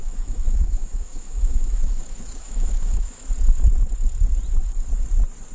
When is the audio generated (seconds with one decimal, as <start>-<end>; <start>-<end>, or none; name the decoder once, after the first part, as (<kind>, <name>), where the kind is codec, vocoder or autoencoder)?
0.0-3.3 (autoencoder, DAC-VAE)